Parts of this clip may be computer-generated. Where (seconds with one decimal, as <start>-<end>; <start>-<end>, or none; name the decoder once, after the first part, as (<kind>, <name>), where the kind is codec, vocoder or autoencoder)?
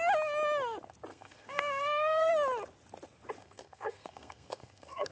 1.1-2.3 (codec, SNAC); 3.4-5.1